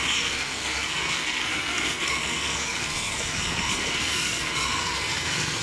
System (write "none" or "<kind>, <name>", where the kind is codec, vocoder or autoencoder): codec, SNAC